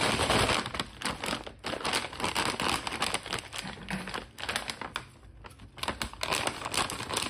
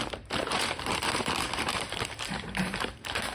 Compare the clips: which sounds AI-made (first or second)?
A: second